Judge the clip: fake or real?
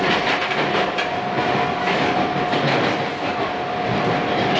real